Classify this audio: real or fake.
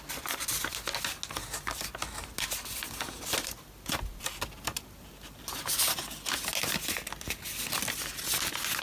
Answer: real